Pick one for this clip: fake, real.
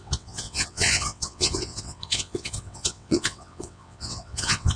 fake